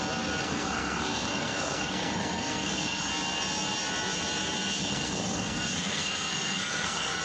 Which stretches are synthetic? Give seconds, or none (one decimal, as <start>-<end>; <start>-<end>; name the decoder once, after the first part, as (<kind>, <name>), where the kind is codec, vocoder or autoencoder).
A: 0.4-3.1 (codec, SNAC); 4.8-7.2